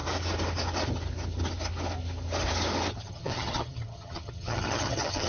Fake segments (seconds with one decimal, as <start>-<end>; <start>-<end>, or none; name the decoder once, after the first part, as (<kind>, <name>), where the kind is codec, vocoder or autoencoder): 2.9-5.3 (vocoder, HiFi-GAN)

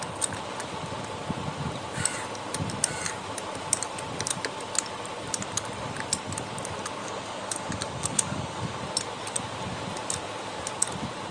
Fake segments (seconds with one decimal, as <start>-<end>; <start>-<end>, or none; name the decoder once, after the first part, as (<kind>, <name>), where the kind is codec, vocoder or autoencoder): 7.0-8.8 (codec, DAC)

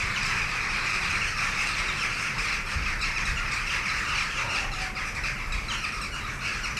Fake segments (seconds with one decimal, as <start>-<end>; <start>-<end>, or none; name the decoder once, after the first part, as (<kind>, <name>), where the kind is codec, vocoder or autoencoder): 0.0-3.2 (vocoder, BigVGAN v2)

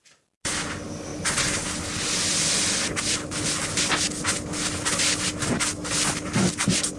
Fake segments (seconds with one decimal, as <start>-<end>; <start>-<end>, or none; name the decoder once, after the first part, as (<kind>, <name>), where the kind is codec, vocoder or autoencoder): none

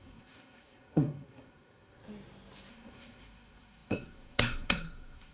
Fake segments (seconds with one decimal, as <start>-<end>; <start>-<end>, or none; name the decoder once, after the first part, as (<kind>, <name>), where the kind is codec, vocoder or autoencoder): 0.0-2.0 (codec, SNAC); 2.7-5.3